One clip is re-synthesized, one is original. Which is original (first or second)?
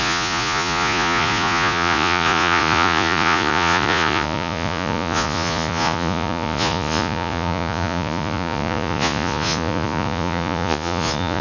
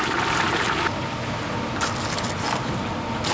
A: second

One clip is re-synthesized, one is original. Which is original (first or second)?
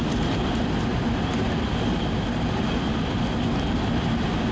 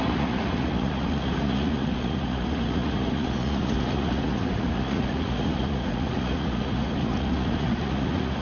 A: first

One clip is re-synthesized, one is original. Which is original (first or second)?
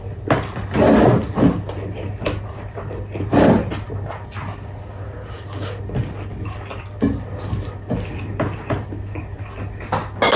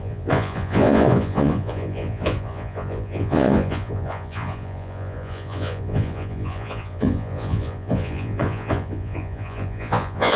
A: first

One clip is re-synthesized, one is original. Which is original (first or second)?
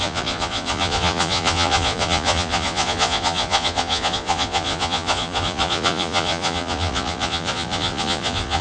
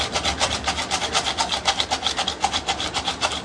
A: second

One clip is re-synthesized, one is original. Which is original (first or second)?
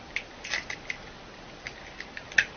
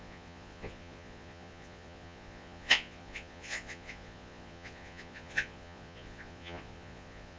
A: first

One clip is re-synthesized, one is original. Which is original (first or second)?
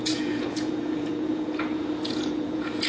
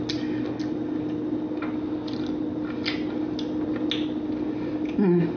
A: second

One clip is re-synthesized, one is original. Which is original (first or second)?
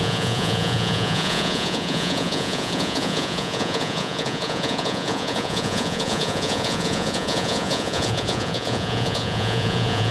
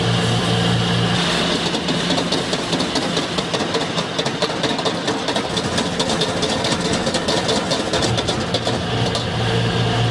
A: second